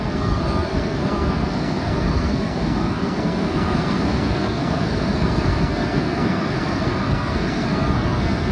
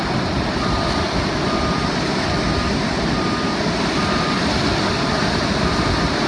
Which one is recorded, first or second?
second